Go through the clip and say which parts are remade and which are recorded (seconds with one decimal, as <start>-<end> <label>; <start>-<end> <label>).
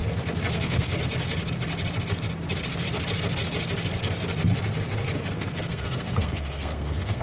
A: 0.0-0.5 recorded; 0.5-1.0 remade; 1.0-5.3 recorded; 5.3-7.2 remade